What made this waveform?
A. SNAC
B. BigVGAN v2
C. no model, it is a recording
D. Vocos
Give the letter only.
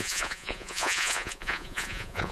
D